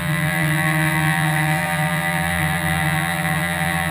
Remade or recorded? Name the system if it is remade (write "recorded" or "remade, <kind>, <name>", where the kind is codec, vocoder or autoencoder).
remade, vocoder, BigVGAN v2